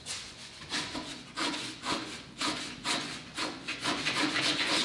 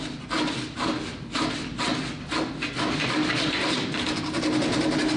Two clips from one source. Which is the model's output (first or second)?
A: first